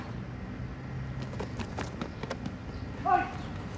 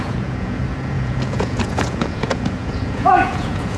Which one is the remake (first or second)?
second